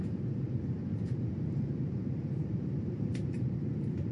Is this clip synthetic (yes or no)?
yes